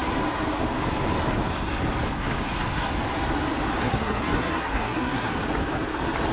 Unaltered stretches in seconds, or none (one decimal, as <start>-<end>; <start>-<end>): 0.0-3.8; 5.3-6.3